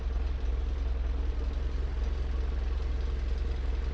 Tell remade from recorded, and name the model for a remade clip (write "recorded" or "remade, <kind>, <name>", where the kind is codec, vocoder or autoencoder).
recorded